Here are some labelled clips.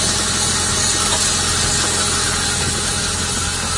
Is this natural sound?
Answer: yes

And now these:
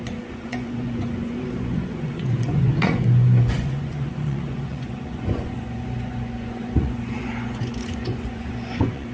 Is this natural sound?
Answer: no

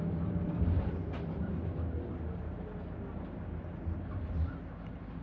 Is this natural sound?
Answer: yes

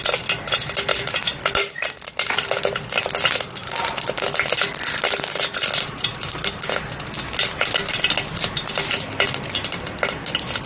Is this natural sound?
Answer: yes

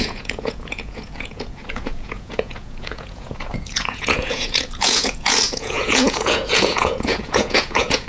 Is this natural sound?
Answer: no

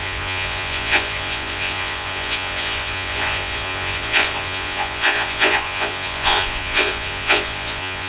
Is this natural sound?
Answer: no